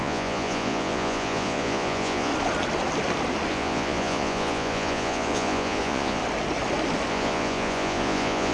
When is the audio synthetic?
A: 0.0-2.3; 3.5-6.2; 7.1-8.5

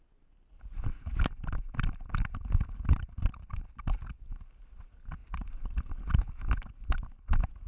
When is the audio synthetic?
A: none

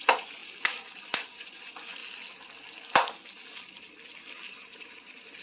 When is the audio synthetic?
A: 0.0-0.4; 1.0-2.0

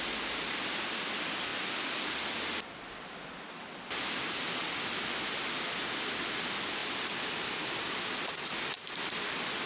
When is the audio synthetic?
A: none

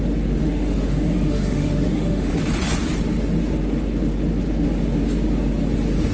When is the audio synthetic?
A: 0.4-2.3

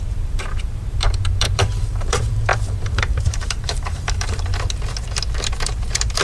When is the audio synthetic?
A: 0.0-4.5; 5.6-6.2

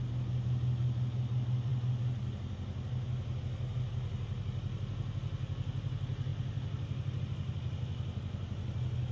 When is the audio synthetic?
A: none

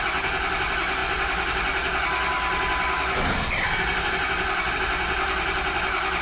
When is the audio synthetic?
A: none